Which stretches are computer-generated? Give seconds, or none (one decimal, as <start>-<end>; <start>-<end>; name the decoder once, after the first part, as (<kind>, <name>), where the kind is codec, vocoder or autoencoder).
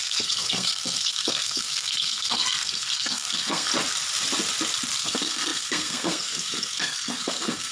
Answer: 0.0-3.7 (codec, SNAC); 5.0-7.7